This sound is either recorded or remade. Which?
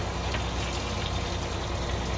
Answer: recorded